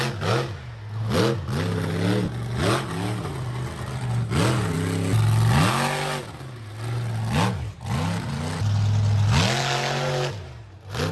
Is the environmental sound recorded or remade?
recorded